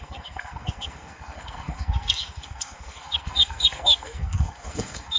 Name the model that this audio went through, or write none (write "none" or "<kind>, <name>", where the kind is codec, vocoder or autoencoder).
codec, SNAC